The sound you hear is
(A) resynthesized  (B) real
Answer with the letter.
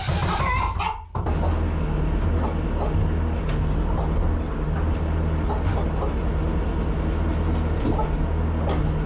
B